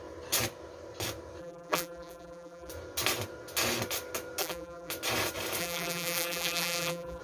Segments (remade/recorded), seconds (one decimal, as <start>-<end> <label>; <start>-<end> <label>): 0.0-1.4 recorded; 1.4-2.7 remade; 2.7-4.4 recorded; 4.4-4.9 remade; 4.9-5.6 recorded; 5.6-7.2 remade